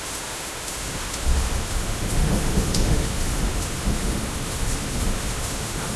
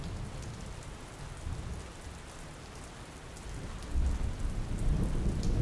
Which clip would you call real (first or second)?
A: second